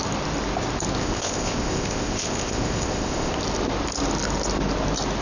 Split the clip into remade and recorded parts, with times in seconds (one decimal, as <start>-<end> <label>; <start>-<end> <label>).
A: 0.0-1.0 recorded; 1.0-3.3 remade; 3.3-5.2 recorded